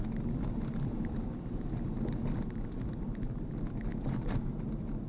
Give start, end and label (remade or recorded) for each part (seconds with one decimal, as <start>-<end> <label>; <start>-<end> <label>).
0.0-5.1 remade